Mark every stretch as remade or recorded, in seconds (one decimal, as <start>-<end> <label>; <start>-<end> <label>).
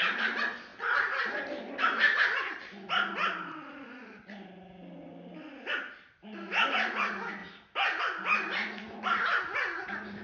0.0-10.2 recorded